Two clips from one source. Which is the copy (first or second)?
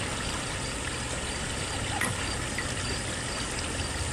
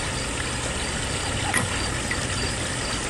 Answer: first